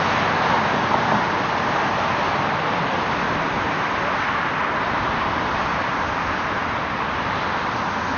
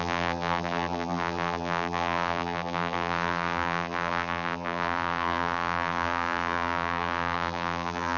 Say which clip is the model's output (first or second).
second